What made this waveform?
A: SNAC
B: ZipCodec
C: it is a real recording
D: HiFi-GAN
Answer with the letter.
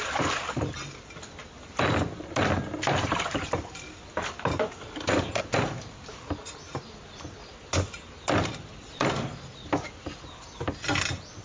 C